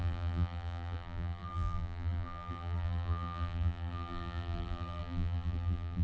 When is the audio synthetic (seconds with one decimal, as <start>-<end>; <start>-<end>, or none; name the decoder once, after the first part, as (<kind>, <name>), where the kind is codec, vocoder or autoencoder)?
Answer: 0.0-6.0 (vocoder, BigVGAN v2)